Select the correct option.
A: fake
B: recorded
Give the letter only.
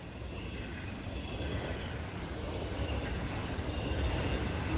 B